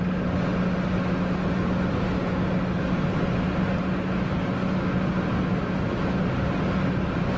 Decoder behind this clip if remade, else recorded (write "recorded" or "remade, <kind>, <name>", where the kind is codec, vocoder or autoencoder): recorded